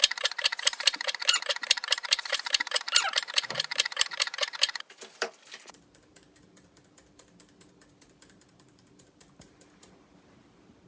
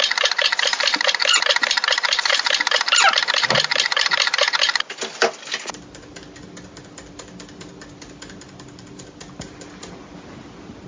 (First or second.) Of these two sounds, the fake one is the first